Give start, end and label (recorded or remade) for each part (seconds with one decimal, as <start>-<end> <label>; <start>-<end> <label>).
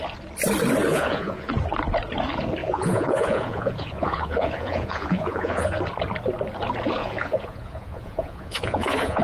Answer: 0.0-0.9 recorded; 0.9-1.5 remade; 1.5-2.6 recorded; 2.6-5.8 remade; 5.8-7.0 recorded; 7.0-9.2 remade